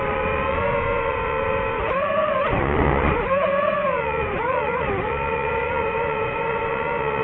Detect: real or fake fake